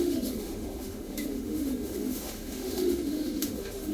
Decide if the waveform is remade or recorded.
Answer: remade